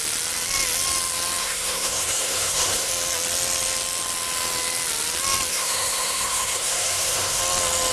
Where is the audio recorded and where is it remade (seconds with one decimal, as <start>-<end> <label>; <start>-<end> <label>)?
0.0-1.4 recorded; 1.4-2.9 remade; 2.9-5.5 recorded; 5.5-7.4 remade; 7.4-7.9 recorded